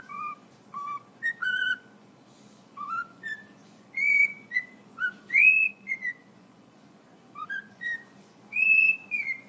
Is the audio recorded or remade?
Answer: remade